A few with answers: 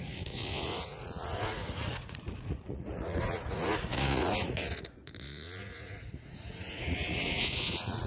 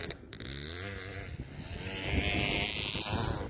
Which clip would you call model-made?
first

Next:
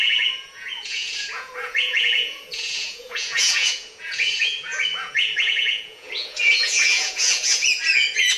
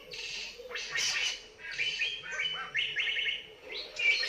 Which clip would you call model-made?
first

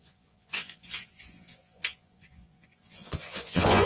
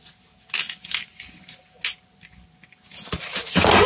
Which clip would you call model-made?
first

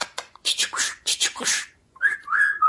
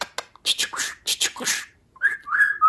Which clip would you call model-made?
first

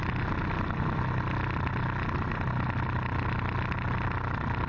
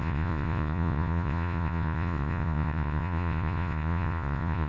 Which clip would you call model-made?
second